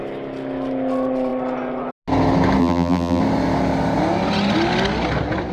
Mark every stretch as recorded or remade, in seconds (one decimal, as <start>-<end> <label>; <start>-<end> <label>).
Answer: 0.0-2.6 recorded; 2.6-3.2 remade; 3.2-5.5 recorded

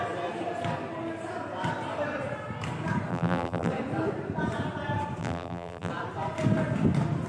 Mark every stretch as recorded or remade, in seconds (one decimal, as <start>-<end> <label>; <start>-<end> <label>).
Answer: 0.0-3.1 recorded; 3.1-3.7 remade; 3.7-5.2 recorded; 5.2-5.9 remade; 5.9-7.3 recorded

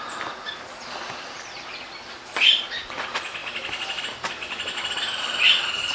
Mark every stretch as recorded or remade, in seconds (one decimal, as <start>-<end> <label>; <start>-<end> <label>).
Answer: 0.0-3.4 remade; 3.4-4.0 recorded; 4.0-5.9 remade

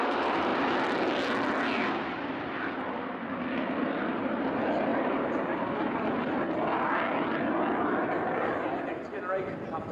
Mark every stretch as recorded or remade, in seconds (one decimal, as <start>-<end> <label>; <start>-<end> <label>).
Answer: 0.0-4.9 recorded; 4.9-5.6 remade; 5.6-9.9 recorded

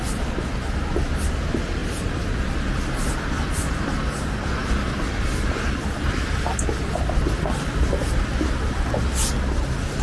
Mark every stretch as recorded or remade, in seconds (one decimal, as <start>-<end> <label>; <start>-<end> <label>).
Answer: 0.0-10.0 recorded

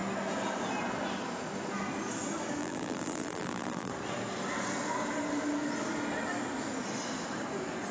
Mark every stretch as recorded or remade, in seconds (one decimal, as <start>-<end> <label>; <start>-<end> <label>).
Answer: 0.0-2.6 recorded; 2.6-3.9 remade; 3.9-7.9 recorded

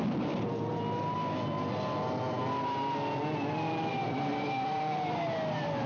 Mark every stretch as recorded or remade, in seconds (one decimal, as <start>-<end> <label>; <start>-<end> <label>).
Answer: 0.0-3.9 recorded; 3.9-5.2 remade; 5.2-5.9 recorded